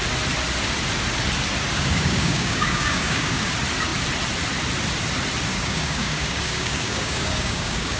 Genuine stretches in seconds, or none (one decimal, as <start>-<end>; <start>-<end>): 0.0-1.7; 3.5-5.5